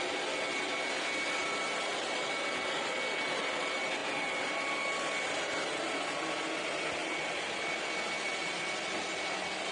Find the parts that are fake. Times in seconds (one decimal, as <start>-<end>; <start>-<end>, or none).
7.0-7.6